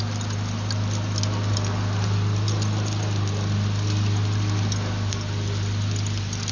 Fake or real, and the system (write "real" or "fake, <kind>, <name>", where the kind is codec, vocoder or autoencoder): real